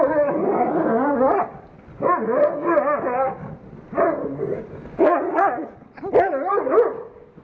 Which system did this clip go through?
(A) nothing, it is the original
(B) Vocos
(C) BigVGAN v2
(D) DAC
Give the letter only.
A